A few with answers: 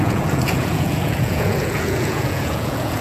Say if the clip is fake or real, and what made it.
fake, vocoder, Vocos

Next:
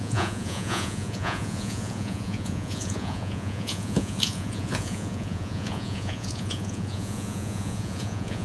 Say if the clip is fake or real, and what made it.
fake, vocoder, Vocos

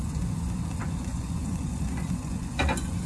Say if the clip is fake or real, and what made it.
fake, vocoder, Vocos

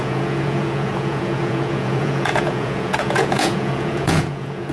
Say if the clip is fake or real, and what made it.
fake, vocoder, Vocos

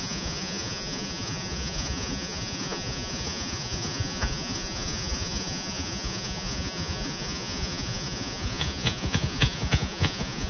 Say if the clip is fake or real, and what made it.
fake, vocoder, Vocos